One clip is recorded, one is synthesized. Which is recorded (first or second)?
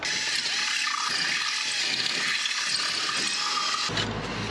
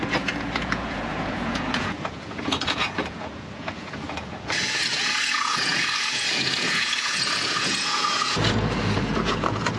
first